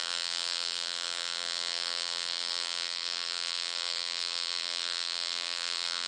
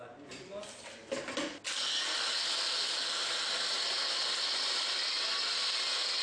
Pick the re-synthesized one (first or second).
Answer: first